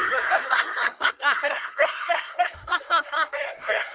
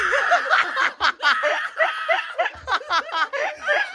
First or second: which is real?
second